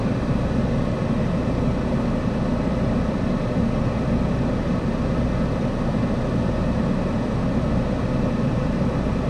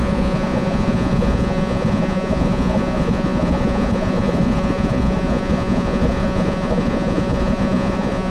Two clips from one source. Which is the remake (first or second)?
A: second